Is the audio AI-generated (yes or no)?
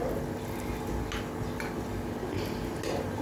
no